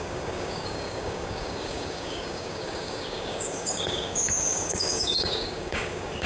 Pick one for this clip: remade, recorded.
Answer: remade